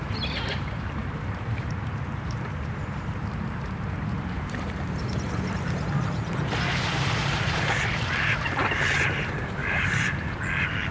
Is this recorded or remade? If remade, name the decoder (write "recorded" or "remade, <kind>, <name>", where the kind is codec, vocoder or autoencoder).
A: remade, vocoder, BigVGAN v2